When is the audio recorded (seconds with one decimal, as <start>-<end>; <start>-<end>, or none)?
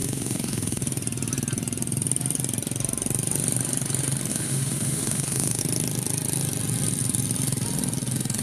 0.8-4.3; 5.6-8.4